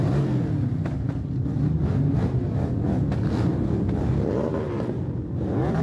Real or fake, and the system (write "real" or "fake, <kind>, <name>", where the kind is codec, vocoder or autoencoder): real